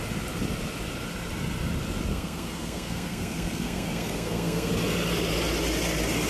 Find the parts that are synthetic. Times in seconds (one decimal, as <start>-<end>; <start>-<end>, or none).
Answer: 2.1-4.7